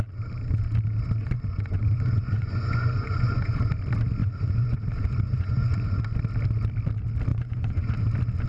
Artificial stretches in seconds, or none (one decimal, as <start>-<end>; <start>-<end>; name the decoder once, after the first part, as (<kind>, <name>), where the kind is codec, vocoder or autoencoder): 1.2-3.6 (vocoder, Vocos); 4.2-6.0; 7.3-8.0

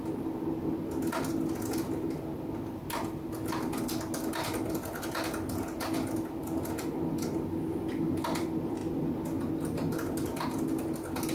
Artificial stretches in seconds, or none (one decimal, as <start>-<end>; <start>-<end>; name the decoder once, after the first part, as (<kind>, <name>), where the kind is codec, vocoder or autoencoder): none

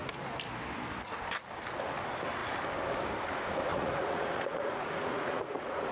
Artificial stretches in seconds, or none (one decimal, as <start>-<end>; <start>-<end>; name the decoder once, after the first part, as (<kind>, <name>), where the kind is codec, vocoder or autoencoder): 3.7-5.9 (vocoder, Vocos)

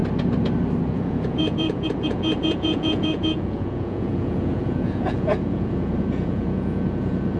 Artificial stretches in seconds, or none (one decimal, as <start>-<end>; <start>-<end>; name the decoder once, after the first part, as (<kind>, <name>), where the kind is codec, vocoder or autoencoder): 0.9-7.4 (vocoder, Vocos)

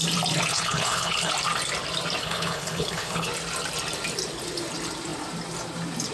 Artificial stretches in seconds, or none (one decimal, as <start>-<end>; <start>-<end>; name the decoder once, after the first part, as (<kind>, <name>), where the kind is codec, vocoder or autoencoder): 0.5-1.3 (codec, HILCodec); 2.2-3.3

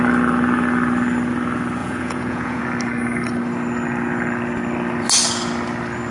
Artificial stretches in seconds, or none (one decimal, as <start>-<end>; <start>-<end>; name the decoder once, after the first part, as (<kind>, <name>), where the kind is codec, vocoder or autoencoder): 1.8-2.6 (vocoder, Vocos)

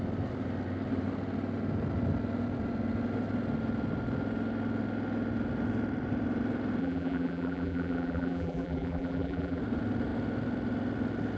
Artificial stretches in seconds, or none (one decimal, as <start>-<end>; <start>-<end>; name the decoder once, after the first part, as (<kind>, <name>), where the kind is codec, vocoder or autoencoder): 6.8-9.6 (vocoder, BigVGAN v2)